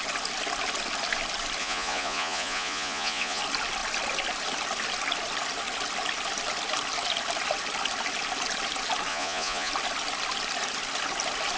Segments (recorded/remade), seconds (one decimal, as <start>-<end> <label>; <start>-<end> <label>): 0.0-1.6 recorded; 1.6-3.4 remade; 3.4-9.1 recorded; 9.1-9.7 remade; 9.7-11.6 recorded